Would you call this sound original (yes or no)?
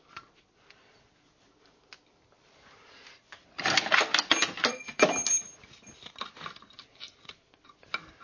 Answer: yes